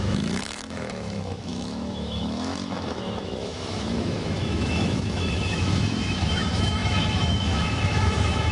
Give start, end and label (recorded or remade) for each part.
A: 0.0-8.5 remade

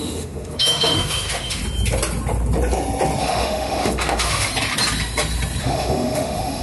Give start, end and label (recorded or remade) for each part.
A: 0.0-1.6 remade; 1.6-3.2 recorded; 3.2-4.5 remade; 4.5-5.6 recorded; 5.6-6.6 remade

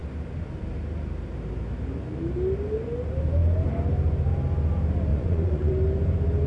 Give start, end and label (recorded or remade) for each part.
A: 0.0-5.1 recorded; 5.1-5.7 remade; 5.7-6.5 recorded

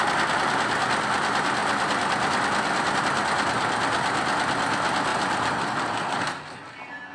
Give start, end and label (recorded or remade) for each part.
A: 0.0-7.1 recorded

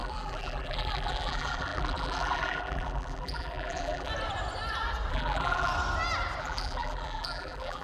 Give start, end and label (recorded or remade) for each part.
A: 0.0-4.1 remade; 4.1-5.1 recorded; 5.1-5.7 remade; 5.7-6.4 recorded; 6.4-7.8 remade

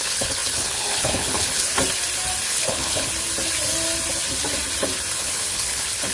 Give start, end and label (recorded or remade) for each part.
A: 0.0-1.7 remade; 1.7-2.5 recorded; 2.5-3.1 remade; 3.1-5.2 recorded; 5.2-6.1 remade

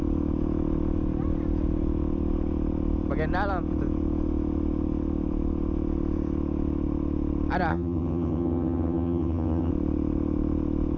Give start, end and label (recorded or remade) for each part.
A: 0.0-7.7 recorded; 7.7-9.7 remade; 9.7-11.0 recorded

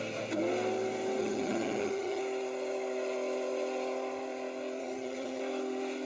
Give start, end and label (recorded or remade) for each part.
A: 0.0-1.2 recorded; 1.2-2.2 remade; 2.2-4.8 recorded; 4.8-5.4 remade; 5.4-6.0 recorded